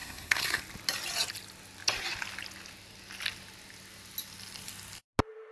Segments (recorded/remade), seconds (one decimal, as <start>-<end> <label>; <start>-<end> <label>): 0.0-0.6 remade; 0.6-5.5 recorded